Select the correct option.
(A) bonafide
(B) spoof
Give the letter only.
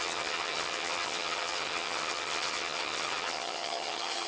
B